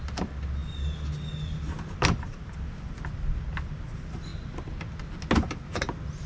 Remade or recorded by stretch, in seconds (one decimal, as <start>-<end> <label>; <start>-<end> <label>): 0.0-6.3 recorded